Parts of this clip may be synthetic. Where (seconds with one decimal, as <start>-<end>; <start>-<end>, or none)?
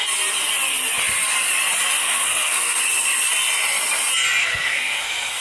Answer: 2.0-2.8; 4.4-5.4